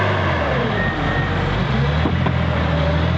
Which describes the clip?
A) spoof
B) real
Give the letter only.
B